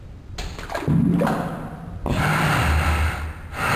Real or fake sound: real